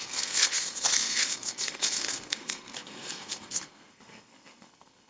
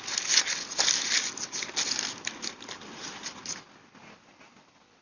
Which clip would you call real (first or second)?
second